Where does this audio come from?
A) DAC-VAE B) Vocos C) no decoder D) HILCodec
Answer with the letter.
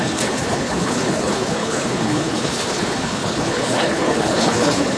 D